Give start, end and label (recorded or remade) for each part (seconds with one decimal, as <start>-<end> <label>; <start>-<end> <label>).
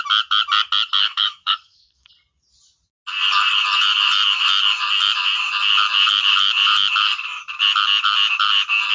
0.0-1.0 recorded; 1.0-2.1 remade; 2.1-8.9 recorded